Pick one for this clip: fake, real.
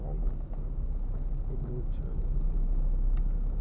real